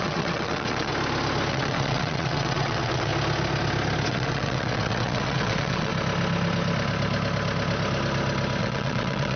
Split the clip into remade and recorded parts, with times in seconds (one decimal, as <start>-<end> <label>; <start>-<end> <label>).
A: 0.0-0.9 remade; 0.9-1.5 recorded; 1.5-3.1 remade; 3.1-4.1 recorded; 4.1-5.9 remade; 5.9-8.6 recorded; 8.6-9.4 remade